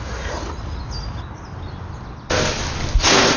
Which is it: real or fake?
real